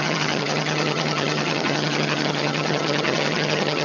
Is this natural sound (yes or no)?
no